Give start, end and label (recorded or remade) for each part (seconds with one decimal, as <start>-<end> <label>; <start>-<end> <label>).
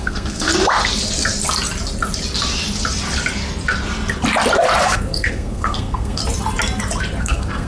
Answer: 0.0-0.5 remade; 0.5-4.8 recorded; 4.8-6.2 remade; 6.2-7.2 recorded; 7.2-7.7 remade